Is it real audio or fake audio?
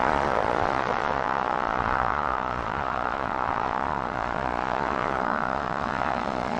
fake